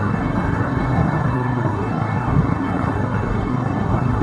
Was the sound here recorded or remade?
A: remade